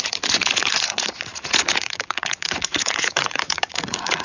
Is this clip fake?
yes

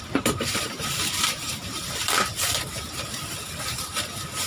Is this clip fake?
yes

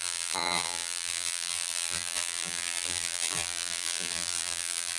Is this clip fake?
yes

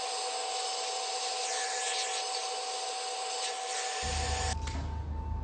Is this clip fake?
no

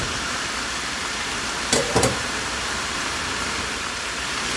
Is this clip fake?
yes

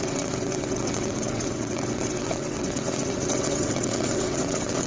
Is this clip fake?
yes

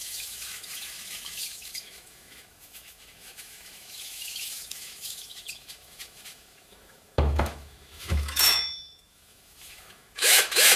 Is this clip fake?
yes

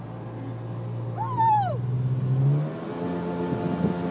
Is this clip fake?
no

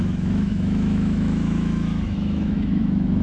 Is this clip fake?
yes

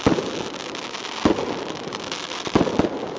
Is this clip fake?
no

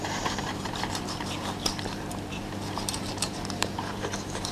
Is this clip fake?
yes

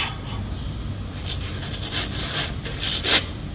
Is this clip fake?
no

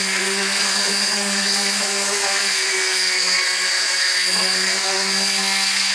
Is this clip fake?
yes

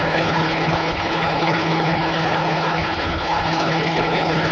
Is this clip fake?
yes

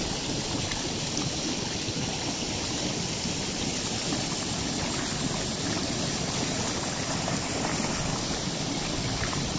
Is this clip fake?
no